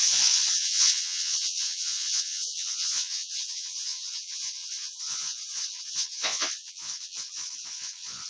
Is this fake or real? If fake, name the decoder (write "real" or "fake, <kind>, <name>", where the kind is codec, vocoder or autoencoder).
fake, vocoder, Vocos